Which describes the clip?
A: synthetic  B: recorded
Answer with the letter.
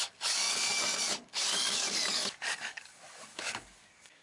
A